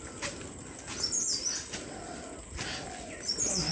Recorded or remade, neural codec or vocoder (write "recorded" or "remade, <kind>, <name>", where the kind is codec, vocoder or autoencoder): recorded